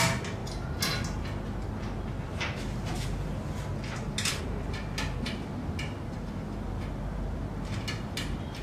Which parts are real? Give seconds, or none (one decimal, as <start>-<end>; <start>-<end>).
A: 0.0-8.6